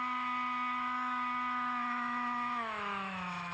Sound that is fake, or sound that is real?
fake